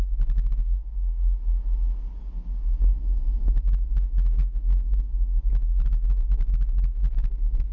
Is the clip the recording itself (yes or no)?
yes